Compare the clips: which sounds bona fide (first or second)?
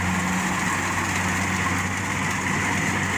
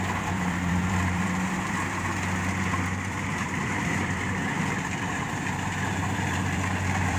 first